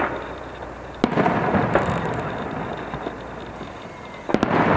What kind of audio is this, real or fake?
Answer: real